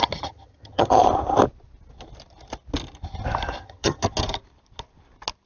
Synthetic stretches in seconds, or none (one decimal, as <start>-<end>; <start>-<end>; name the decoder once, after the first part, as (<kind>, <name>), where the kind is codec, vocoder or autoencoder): 0.0-1.0 (vocoder, HiFi-GAN); 3.6-4.0